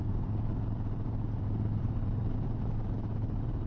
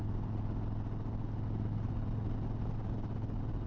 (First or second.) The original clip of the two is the second